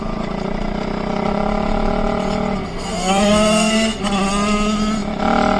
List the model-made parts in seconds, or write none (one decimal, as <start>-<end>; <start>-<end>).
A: 2.7-4.0